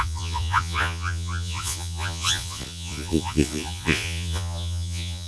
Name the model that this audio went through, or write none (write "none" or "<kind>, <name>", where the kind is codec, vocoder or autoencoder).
vocoder, Vocos